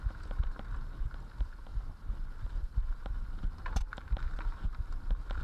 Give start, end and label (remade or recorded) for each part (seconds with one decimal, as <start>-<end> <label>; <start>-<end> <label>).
0.0-5.4 recorded